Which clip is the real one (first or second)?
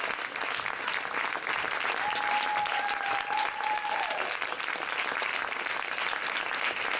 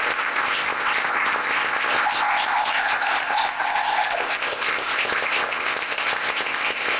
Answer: first